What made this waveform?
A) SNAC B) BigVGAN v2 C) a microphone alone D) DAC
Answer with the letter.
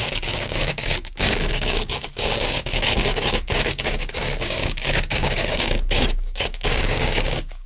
D